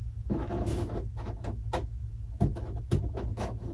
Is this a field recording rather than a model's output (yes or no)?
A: no